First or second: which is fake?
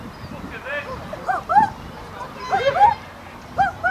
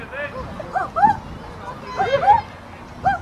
first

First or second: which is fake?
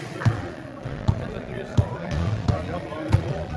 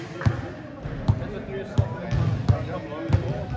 first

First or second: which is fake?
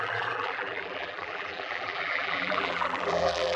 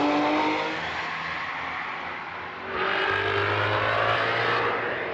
first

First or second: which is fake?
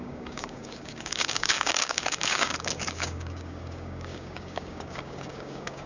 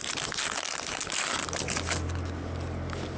first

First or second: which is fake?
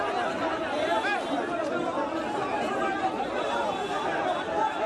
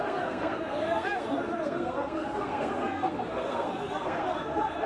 second